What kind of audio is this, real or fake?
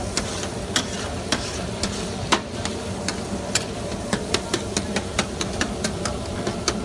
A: fake